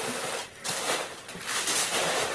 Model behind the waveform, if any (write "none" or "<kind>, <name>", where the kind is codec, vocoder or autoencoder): none